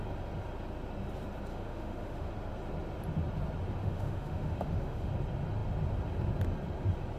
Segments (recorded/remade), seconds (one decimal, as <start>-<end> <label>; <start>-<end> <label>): 0.0-1.5 recorded; 1.5-2.3 remade; 2.3-3.8 recorded; 3.8-5.1 remade; 5.1-7.2 recorded